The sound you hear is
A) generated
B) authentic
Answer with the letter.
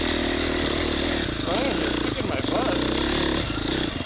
B